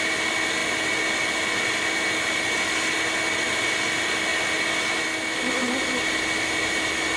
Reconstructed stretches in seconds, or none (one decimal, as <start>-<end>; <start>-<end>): none